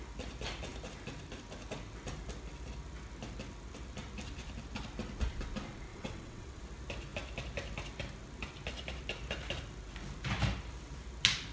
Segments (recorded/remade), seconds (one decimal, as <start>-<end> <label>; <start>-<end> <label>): 0.0-5.9 recorded; 5.9-6.6 remade; 6.6-11.5 recorded